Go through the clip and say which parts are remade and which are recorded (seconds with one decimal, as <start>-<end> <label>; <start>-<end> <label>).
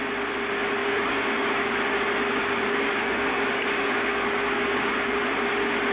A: 0.0-0.8 recorded; 0.8-1.7 remade; 1.7-2.4 recorded; 2.4-5.2 remade; 5.2-5.9 recorded